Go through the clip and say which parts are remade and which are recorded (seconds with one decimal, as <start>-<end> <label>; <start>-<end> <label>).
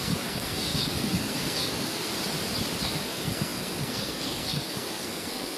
0.0-2.1 remade; 2.1-2.8 recorded; 2.8-5.6 remade